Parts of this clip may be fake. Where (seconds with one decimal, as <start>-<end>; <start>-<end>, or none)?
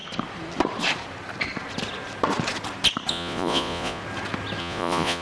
3.1-4.0; 4.6-5.2